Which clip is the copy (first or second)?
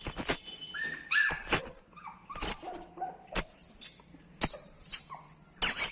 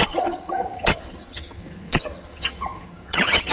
second